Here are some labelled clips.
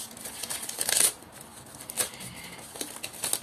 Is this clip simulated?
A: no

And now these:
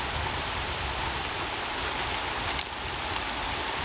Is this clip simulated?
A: no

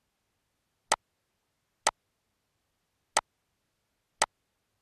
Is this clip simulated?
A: no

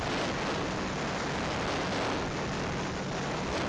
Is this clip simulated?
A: no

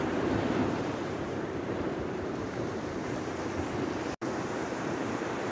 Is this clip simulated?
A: yes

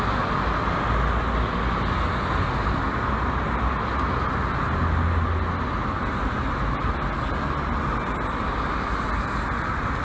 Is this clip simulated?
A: no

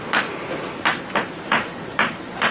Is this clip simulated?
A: yes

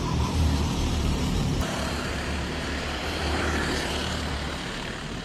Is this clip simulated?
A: yes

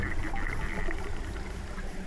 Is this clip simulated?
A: no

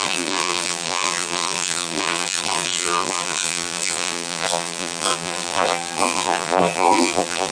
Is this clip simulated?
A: yes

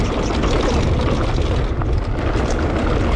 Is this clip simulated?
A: no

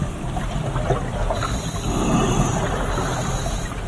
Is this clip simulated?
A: no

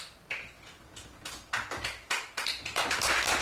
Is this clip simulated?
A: no